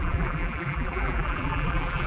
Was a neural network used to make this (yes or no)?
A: yes